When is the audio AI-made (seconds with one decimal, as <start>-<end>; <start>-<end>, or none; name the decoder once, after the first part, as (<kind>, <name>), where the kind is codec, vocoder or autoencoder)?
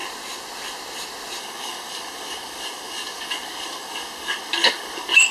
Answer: 1.4-5.3 (codec, DAC)